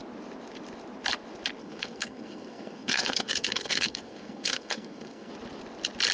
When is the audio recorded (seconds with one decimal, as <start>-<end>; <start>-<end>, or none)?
0.0-1.6; 5.3-6.1